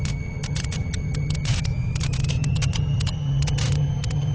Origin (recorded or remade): remade